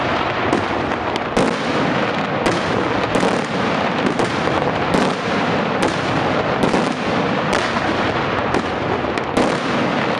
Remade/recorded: recorded